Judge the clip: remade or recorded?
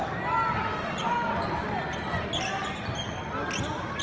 recorded